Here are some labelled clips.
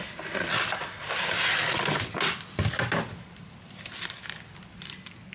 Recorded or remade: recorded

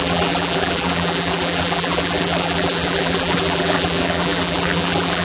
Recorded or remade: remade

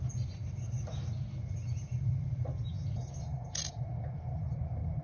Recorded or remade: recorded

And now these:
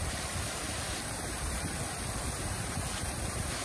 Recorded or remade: remade